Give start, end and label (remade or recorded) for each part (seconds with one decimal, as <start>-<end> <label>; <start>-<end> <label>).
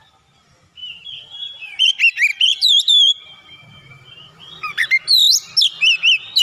0.0-0.8 recorded; 0.8-1.9 remade; 1.9-2.3 recorded; 2.3-4.9 remade; 4.9-6.4 recorded